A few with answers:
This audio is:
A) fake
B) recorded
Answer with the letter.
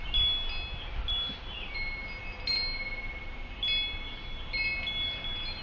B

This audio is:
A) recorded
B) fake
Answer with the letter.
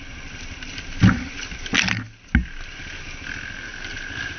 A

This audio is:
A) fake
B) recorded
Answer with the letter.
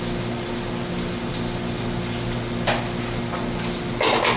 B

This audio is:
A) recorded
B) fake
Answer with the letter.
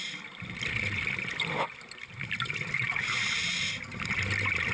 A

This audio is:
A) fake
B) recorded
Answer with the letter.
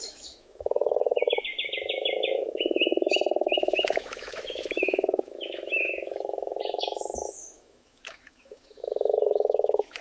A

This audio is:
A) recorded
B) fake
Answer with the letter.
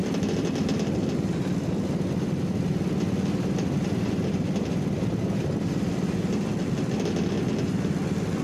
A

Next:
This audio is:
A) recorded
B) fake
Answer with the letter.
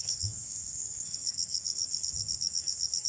B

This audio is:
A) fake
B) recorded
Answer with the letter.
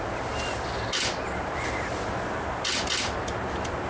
B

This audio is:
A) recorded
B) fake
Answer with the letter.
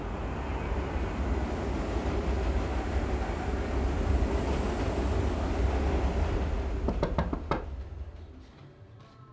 A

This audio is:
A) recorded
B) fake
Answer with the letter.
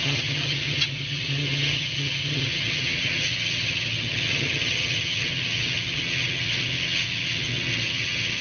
B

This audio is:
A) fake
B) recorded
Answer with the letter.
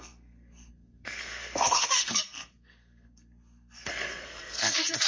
A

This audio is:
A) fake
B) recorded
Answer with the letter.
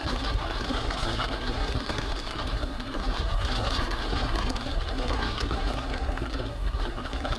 A